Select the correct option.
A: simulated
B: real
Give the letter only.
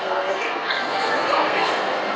A